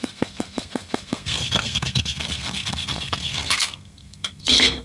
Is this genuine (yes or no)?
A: no